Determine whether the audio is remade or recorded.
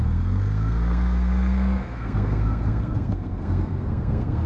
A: remade